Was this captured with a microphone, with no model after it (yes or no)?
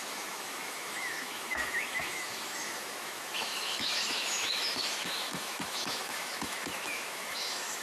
no